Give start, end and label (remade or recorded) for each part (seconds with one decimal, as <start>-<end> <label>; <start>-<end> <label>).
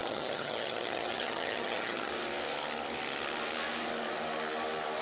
0.0-2.1 remade; 2.1-5.0 recorded